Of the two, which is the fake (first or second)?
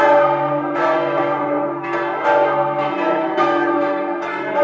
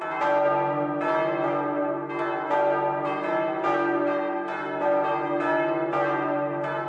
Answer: first